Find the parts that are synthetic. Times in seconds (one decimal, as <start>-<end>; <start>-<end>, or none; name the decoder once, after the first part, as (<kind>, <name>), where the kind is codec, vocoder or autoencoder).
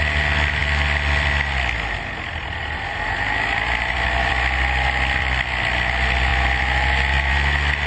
none